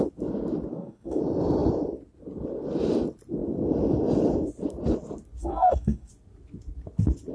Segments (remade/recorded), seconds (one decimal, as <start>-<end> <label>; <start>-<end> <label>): 0.0-0.7 recorded; 0.7-1.2 remade; 1.2-5.4 recorded; 5.4-6.1 remade; 6.1-7.3 recorded